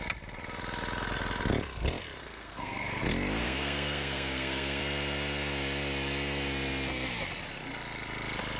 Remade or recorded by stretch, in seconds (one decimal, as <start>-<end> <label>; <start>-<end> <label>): 0.0-2.2 recorded; 2.2-3.0 remade; 3.0-3.4 recorded; 3.4-4.8 remade; 4.8-8.6 recorded